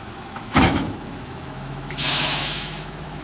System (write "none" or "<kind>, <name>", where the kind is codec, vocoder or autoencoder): autoencoder, DAC-VAE